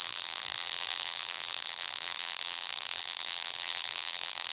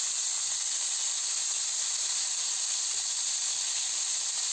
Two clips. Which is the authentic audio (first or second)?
second